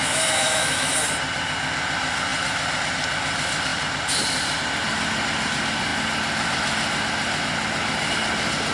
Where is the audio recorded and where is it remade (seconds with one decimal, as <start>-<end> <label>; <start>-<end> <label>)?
0.0-0.9 remade; 0.9-8.7 recorded